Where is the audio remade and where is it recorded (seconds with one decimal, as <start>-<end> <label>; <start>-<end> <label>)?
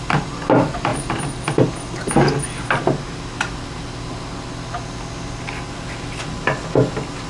0.0-7.3 recorded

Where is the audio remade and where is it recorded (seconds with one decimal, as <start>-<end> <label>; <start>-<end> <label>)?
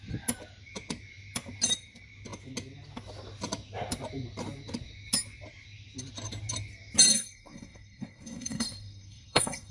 0.0-7.1 recorded; 7.1-9.7 remade